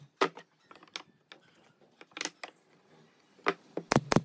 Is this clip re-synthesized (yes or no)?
no